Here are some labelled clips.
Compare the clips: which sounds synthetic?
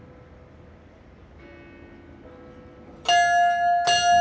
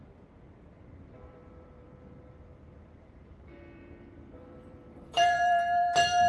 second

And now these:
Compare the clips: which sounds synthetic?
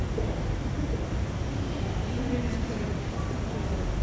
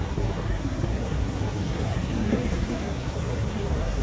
second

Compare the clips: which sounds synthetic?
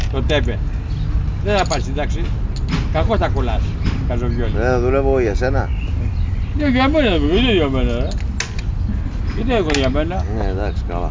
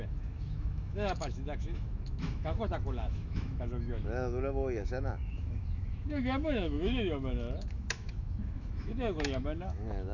second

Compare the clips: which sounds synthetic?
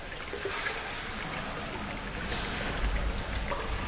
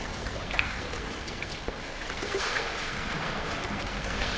second